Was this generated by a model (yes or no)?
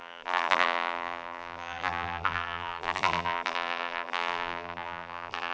yes